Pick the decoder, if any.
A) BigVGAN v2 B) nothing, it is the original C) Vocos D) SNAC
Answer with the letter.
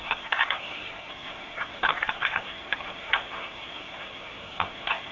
D